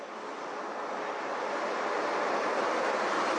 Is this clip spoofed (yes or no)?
no